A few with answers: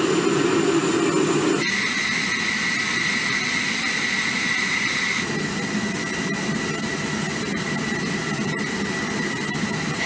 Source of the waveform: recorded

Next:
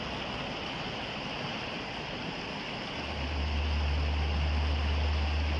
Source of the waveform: recorded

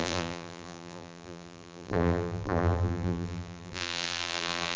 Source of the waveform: remade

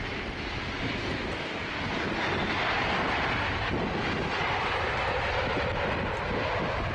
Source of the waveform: recorded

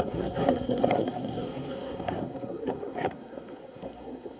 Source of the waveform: remade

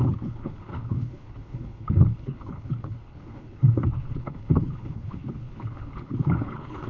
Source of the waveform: remade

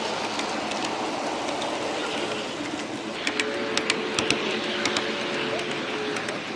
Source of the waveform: recorded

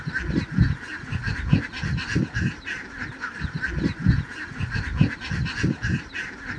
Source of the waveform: recorded